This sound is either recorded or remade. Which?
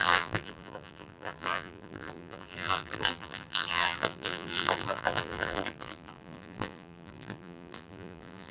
remade